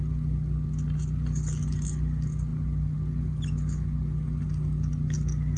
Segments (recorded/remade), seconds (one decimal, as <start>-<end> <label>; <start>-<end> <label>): 0.0-5.6 recorded